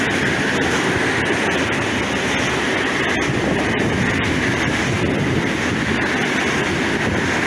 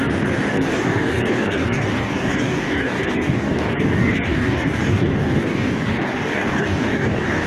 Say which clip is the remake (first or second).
second